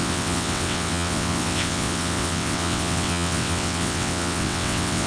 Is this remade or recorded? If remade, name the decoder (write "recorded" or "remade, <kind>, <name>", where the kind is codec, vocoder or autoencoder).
remade, vocoder, WaveNeXt